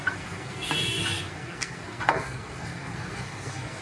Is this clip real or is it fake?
fake